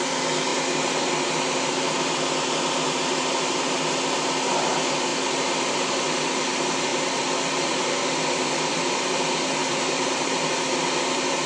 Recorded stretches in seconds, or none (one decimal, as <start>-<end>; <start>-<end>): 0.0-5.1; 6.0-6.9; 8.8-9.6; 10.4-11.5